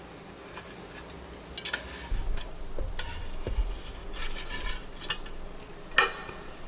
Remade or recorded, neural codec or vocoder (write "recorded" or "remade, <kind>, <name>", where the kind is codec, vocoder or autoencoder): recorded